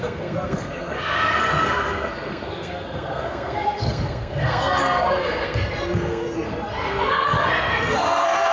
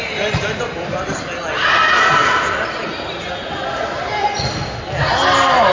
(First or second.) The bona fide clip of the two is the second